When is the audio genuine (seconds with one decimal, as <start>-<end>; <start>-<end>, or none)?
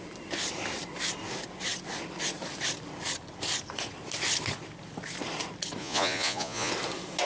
0.0-5.8; 6.7-7.3